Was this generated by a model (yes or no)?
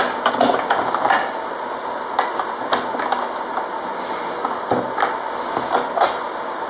no